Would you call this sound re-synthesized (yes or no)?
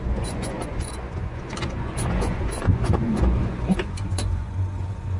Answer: yes